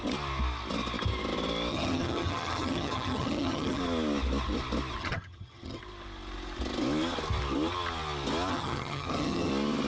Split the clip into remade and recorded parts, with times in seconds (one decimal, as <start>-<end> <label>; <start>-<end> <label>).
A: 0.0-1.7 recorded; 1.7-3.8 remade; 3.8-5.0 recorded; 5.0-5.8 remade; 5.8-8.5 recorded; 8.5-9.5 remade; 9.5-9.9 recorded